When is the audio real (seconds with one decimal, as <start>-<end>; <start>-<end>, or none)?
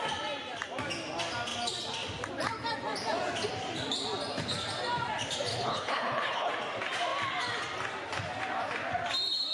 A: 0.0-5.5; 6.5-9.5